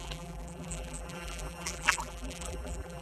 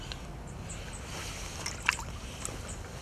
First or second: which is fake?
first